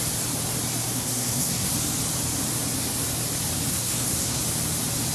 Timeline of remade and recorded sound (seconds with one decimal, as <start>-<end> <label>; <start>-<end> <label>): 0.0-0.8 recorded; 0.8-1.7 remade; 1.7-3.7 recorded; 3.7-4.4 remade; 4.4-5.1 recorded